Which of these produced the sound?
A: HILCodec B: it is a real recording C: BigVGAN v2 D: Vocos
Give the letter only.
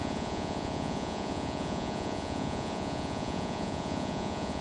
D